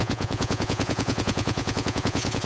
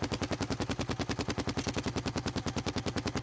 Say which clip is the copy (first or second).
first